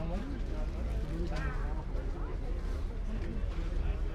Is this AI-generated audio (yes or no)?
no